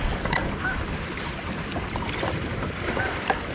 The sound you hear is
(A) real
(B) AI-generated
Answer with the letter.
B